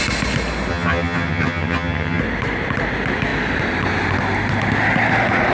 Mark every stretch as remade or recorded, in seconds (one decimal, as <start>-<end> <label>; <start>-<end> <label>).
0.0-0.7 recorded; 0.7-2.2 remade; 2.2-5.5 recorded